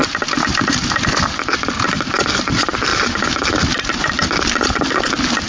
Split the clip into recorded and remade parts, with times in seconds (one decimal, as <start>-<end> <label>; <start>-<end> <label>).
0.0-2.9 recorded; 2.9-5.1 remade; 5.1-5.5 recorded